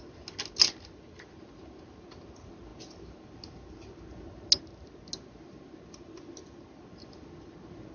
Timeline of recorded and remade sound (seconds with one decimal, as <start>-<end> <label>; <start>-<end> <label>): 0.0-7.9 recorded